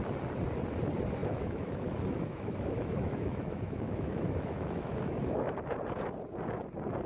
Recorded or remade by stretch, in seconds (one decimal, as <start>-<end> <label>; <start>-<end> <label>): 0.0-1.2 recorded; 1.2-5.5 remade; 5.5-7.1 recorded

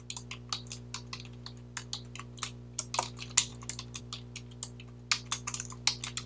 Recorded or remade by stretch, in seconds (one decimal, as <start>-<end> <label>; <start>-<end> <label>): 0.0-6.3 recorded

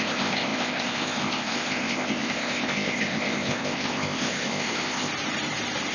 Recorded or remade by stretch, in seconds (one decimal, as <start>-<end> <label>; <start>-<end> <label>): 0.0-5.1 remade; 5.1-5.9 recorded